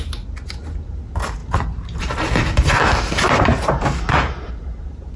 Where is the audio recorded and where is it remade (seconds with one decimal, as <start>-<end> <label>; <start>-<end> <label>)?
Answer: 0.0-1.4 recorded; 1.4-4.5 remade; 4.5-5.2 recorded